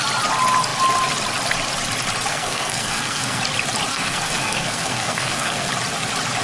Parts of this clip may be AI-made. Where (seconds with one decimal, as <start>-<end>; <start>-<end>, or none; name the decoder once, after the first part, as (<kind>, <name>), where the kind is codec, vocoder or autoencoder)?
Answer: 2.3-3.4 (codec, SNAC); 3.9-5.7

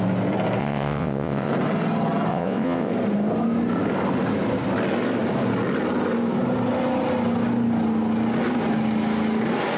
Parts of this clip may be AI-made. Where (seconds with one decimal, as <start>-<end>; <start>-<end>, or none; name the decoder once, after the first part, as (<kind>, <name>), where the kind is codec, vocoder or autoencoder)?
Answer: 0.6-1.5 (vocoder, WaveNeXt); 2.3-2.9

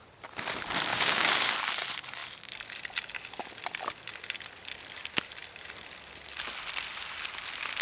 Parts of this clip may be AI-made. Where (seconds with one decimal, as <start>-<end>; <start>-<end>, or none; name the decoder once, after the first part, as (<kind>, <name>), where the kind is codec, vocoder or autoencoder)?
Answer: 0.9-1.5 (codec, DAC)